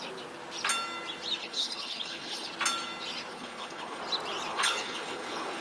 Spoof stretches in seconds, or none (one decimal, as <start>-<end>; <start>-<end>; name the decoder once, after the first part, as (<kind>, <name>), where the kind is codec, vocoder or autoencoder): 1.4-2.5 (codec, HILCodec); 3.3-4.0; 4.5-5.6